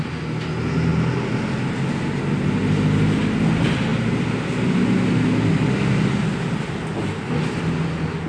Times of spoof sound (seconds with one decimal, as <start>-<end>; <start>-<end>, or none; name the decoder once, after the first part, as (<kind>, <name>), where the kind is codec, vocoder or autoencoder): none